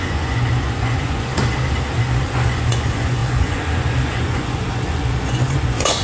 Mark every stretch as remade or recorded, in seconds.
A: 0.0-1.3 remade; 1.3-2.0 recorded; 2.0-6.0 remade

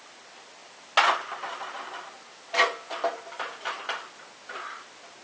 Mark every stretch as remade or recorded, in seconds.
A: 0.0-5.2 recorded

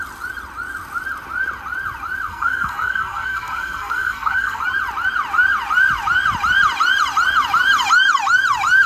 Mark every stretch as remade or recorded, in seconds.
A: 0.0-2.3 recorded; 2.3-4.6 remade; 4.6-8.9 recorded